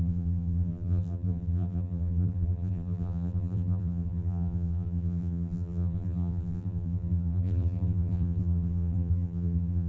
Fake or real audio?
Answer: fake